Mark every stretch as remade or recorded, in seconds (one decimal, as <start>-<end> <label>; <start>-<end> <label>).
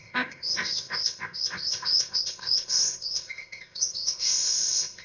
0.0-5.0 remade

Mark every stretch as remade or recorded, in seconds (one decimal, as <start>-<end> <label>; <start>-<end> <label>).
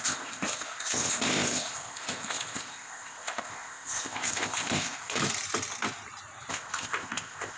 0.0-5.2 remade; 5.2-6.5 recorded; 6.5-7.6 remade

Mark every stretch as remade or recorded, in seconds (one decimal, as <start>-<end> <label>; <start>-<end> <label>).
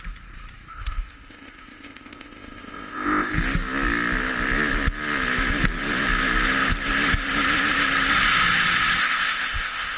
0.0-0.7 recorded; 0.7-3.3 remade; 3.3-9.0 recorded; 9.0-10.0 remade